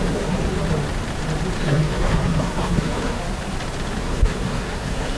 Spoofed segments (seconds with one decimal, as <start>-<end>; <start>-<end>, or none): 0.0-0.5; 1.6-3.2; 4.0-5.2